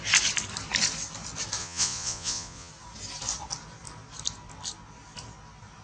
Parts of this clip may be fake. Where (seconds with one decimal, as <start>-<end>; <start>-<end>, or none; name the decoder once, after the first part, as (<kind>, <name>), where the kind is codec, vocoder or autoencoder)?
1.6-2.7 (vocoder, Vocos)